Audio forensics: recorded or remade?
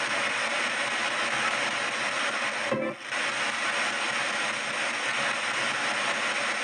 recorded